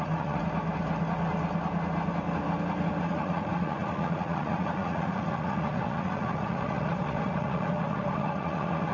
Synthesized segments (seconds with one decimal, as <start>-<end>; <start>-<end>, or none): 0.0-0.4; 3.0-8.9